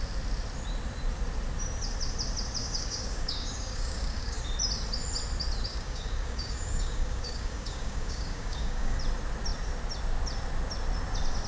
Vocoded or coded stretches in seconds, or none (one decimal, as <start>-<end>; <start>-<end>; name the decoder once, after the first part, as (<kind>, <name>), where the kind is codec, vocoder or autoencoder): 2.6-4.4 (codec, DAC); 5.7-9.0

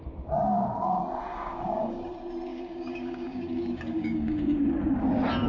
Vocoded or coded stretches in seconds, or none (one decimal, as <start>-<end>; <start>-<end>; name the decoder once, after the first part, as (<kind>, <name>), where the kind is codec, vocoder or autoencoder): 1.3-2.1 (codec, DAC); 2.5-4.8

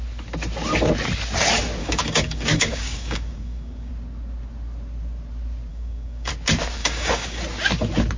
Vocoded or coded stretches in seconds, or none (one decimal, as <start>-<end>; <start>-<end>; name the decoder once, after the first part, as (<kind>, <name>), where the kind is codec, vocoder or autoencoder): 1.8-3.9 (codec, DAC); 5.7-6.3; 6.8-7.4